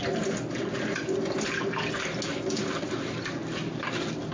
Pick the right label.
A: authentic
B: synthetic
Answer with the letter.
A